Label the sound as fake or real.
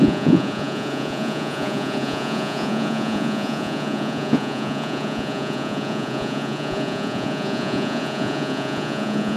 fake